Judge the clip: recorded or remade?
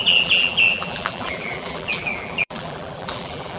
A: remade